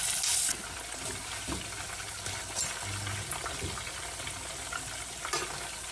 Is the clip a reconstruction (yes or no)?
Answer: no